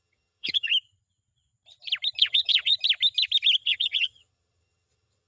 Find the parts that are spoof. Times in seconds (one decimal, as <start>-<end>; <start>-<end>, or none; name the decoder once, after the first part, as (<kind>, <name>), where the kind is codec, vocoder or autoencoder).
0.0-0.7 (vocoder, HiFi-GAN); 2.2-2.7; 3.6-5.3